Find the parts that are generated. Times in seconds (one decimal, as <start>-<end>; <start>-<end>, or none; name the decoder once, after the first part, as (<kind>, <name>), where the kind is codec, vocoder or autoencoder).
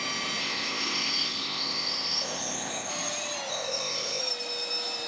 0.4-2.9 (codec, ZipCodec); 3.5-4.2